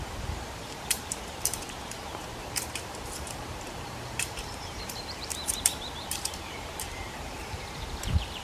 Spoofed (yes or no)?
yes